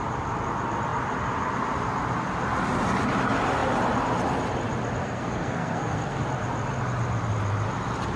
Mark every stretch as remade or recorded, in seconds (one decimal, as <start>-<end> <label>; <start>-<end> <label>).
0.0-5.0 recorded; 5.0-6.2 remade; 6.2-8.2 recorded